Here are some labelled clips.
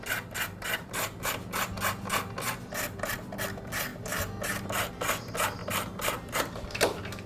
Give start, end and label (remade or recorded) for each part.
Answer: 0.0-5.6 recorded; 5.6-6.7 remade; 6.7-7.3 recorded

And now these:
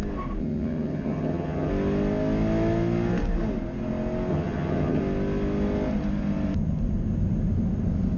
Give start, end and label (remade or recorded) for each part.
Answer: 0.0-0.4 recorded; 0.4-1.7 remade; 1.7-4.3 recorded; 4.3-5.0 remade; 5.0-8.2 recorded

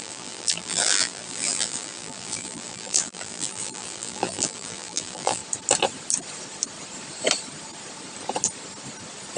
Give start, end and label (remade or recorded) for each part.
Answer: 0.0-5.4 remade; 5.4-9.4 recorded

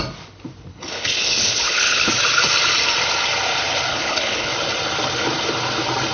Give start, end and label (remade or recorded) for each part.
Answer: 0.0-0.7 recorded; 0.7-2.1 remade; 2.1-3.9 recorded; 3.9-4.5 remade; 4.5-6.1 recorded

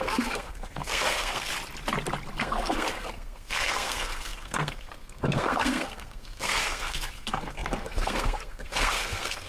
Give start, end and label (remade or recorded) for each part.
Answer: 0.0-1.5 remade; 1.5-2.4 recorded; 2.4-9.5 remade

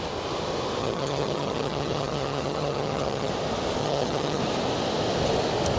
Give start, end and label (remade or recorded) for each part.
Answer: 0.0-0.8 recorded; 0.8-3.3 remade; 3.3-3.8 recorded; 3.8-4.4 remade; 4.4-5.8 recorded